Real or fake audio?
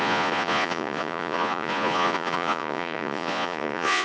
fake